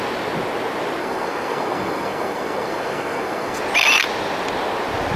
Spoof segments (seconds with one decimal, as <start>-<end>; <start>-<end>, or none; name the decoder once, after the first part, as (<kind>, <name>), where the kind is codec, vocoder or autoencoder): 1.0-3.6 (codec, SNAC)